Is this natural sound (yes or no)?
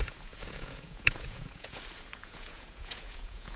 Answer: no